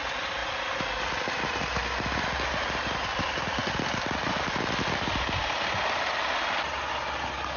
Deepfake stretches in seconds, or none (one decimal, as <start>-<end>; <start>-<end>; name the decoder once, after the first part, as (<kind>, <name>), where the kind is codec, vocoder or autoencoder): none